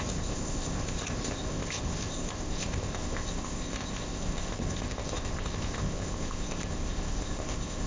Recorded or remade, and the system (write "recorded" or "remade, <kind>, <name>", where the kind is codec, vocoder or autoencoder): remade, codec, ZipCodec